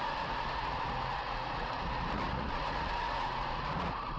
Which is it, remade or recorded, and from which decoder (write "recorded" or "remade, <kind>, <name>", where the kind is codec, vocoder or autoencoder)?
remade, vocoder, Vocos